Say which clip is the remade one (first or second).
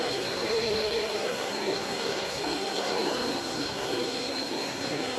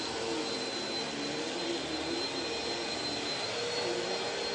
first